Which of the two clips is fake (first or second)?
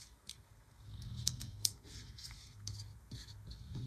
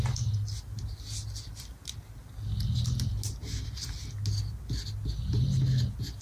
first